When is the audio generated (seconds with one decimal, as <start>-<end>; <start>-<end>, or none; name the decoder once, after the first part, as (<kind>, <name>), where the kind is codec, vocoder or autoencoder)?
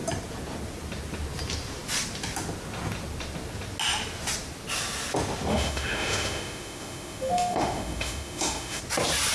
5.5-8.8 (autoencoder, DAC-VAE)